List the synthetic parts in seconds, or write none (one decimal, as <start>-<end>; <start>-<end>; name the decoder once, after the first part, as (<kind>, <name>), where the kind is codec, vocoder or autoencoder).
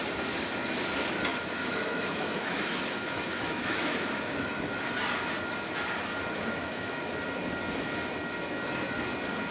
1.3-4.5 (autoencoder, DAC-VAE); 6.6-7.1